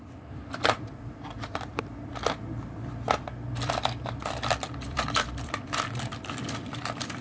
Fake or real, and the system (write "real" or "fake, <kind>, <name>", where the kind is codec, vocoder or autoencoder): fake, vocoder, BigVGAN v2